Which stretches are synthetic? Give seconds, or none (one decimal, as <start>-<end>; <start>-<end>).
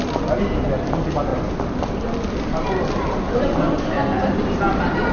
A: none